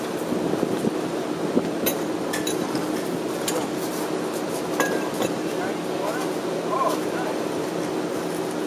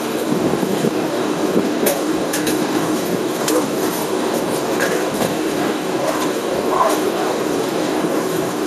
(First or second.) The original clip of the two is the first